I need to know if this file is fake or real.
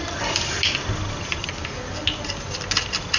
real